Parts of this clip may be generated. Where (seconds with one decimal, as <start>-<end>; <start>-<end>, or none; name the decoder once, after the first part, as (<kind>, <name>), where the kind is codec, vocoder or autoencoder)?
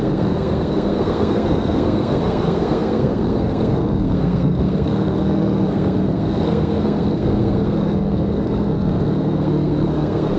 0.0-10.4 (codec, SNAC)